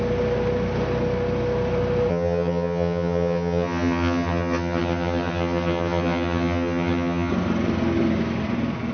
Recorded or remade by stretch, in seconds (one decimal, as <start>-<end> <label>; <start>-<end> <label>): 0.0-2.1 recorded; 2.1-7.3 remade; 7.3-8.9 recorded